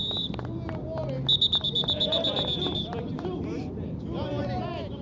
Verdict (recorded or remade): recorded